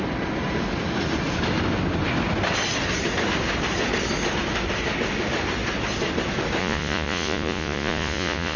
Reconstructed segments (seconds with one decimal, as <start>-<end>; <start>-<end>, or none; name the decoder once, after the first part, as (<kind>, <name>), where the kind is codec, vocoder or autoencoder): 6.6-8.6 (vocoder, Vocos)

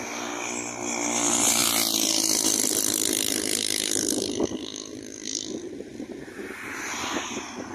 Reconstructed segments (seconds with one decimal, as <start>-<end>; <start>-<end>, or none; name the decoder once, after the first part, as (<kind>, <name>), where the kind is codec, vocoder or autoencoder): 1.6-4.4 (vocoder, BigVGAN v2); 5.9-6.4

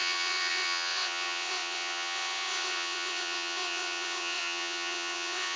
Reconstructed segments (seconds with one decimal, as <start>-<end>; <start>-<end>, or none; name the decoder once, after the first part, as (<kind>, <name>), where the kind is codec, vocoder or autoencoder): 0.0-5.6 (vocoder, WaveNeXt)

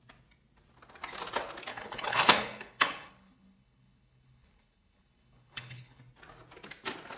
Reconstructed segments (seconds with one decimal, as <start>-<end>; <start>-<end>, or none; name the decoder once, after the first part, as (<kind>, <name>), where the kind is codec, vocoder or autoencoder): 1.7-6.0 (codec, HILCodec)

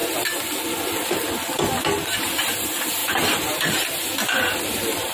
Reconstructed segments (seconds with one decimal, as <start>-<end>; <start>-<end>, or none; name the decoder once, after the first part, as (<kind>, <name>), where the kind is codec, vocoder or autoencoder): 3.0-3.7 (vocoder, BigVGAN v2)

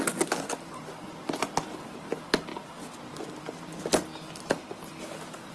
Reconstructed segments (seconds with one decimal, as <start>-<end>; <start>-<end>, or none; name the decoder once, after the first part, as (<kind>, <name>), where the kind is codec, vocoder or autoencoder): none

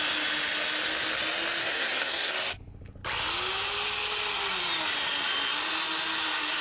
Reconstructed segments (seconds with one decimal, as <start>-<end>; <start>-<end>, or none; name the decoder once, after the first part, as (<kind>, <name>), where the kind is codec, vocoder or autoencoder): 1.6-2.3 (codec, SNAC)